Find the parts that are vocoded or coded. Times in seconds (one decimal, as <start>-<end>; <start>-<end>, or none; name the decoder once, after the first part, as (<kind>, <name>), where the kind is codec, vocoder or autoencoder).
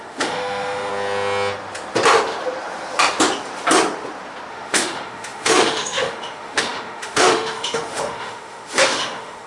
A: 0.0-0.9 (autoencoder, DAC-VAE); 4.5-9.5